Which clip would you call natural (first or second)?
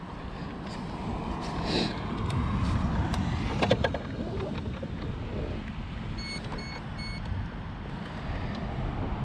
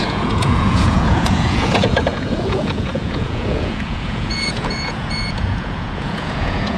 first